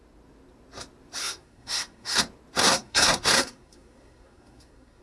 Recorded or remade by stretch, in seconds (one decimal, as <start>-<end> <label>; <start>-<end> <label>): 0.0-1.2 recorded; 1.2-2.2 remade; 2.2-2.6 recorded; 2.6-5.0 remade